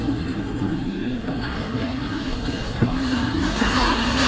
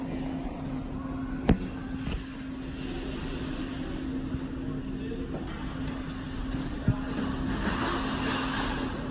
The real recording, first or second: second